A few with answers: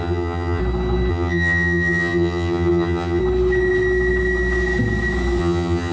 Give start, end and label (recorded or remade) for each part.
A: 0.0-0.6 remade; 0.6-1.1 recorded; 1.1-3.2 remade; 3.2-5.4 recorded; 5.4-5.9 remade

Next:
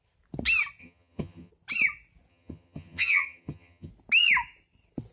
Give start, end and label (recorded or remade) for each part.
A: 0.0-0.8 recorded; 0.8-1.5 remade; 1.5-2.3 recorded; 2.3-3.9 remade; 3.9-5.1 recorded

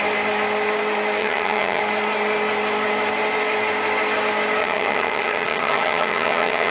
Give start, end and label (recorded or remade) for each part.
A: 0.0-1.2 recorded; 1.2-1.8 remade; 1.8-4.6 recorded; 4.6-6.7 remade

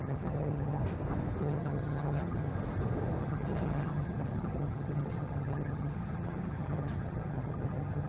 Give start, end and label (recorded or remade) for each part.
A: 0.0-0.8 remade; 0.8-1.4 recorded; 1.4-2.5 remade; 2.5-3.2 recorded; 3.2-8.1 remade

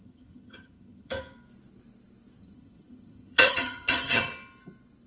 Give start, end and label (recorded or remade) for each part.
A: 0.0-1.1 remade; 1.1-2.4 recorded; 2.4-4.3 remade; 4.3-5.1 recorded

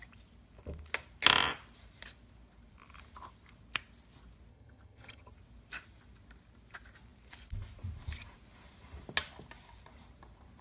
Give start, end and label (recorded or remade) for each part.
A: 0.0-4.5 recorded; 4.5-5.3 remade; 5.3-10.6 recorded